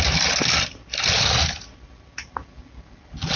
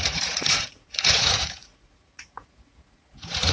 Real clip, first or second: first